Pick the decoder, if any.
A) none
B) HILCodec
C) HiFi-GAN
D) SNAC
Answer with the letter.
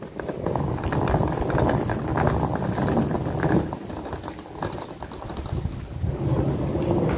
A